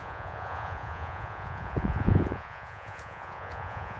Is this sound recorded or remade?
remade